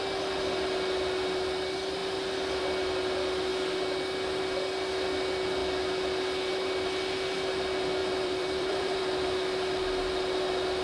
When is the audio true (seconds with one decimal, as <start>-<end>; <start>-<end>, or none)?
0.0-8.0; 9.0-10.8